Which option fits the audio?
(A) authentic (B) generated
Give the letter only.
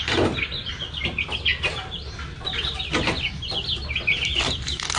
A